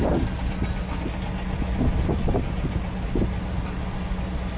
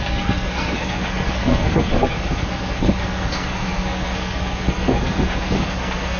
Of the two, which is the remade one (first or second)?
second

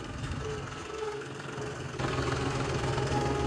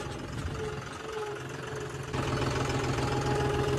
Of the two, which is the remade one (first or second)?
first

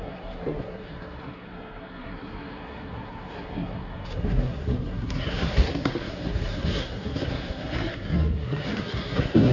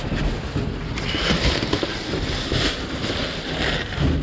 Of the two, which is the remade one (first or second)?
first